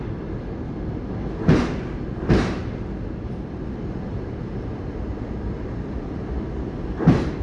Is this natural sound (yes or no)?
yes